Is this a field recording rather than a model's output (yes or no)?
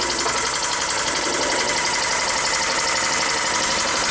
yes